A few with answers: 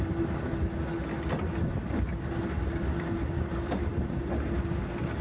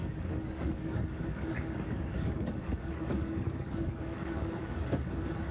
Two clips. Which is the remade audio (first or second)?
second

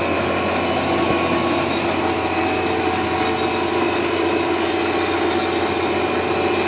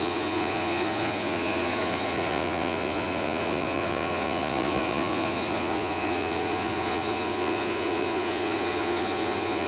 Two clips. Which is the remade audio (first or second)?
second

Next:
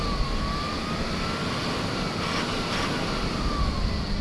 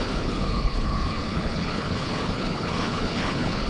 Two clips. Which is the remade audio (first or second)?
second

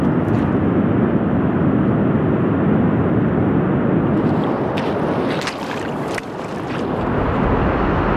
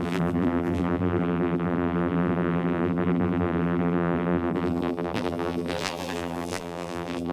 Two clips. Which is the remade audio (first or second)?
second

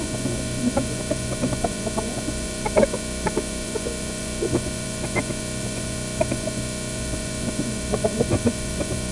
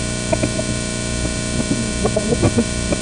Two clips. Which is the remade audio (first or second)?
first